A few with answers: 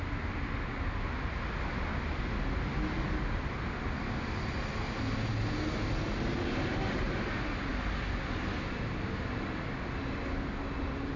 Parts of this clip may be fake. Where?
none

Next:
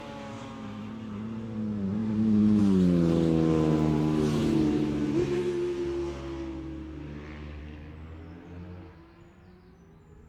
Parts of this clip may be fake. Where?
2.0-2.6 (vocoder, BigVGAN v2)